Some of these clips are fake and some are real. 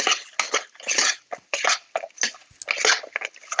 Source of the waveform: real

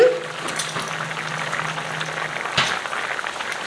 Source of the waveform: real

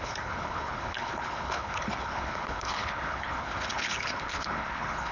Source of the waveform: fake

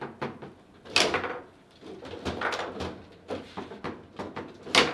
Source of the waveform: real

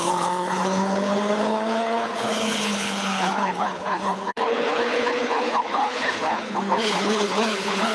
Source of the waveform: fake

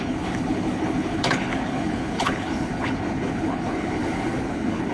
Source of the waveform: fake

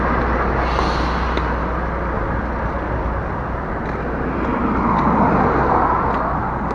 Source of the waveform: real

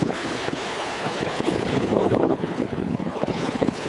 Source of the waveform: fake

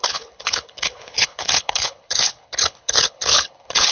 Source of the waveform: fake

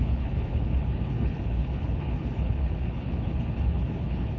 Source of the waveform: fake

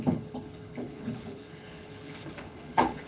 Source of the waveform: fake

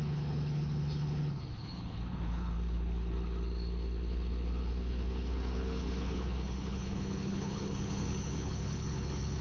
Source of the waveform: fake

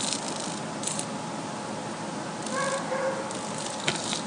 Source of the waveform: real